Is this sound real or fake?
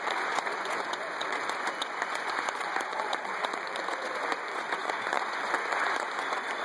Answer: fake